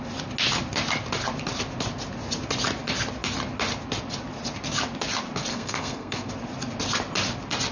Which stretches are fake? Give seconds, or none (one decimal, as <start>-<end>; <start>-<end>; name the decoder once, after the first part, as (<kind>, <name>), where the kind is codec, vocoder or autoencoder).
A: 5.5-6.3 (codec, SNAC)